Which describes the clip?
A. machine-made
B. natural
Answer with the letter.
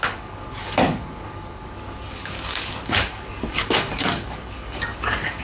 A